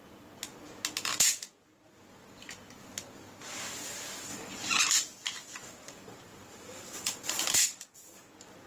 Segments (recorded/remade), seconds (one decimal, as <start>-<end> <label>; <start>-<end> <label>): 0.0-4.3 recorded; 4.3-4.8 remade; 4.8-5.4 recorded; 5.4-8.1 remade; 8.1-8.7 recorded